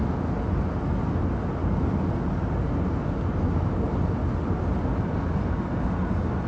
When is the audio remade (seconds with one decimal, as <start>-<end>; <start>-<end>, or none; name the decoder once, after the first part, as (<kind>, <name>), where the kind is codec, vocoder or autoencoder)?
none